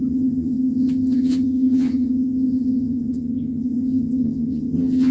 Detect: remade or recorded remade